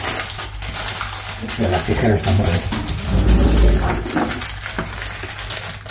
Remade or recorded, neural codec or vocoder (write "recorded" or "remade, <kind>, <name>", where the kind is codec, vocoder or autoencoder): recorded